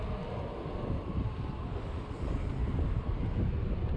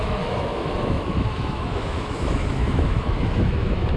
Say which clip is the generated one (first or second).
second